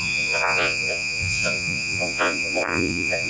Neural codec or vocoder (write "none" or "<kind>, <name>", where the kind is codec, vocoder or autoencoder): vocoder, Vocos